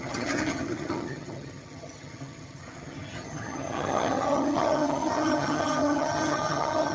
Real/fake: fake